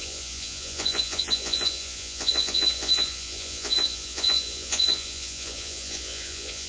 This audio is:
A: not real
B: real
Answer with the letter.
A